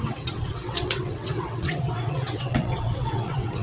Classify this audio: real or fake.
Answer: fake